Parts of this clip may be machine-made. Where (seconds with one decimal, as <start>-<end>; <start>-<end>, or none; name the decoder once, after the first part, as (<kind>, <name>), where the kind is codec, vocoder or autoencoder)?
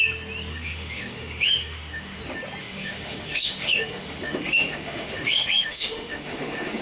0.5-2.2 (autoencoder, DAC-VAE); 2.6-6.8